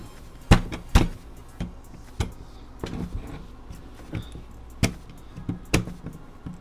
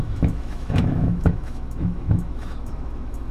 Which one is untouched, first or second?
first